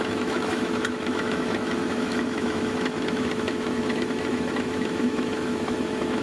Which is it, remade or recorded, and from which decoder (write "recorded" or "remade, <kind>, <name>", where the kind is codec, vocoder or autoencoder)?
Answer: remade, autoencoder, DAC-VAE